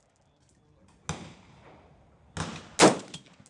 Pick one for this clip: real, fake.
real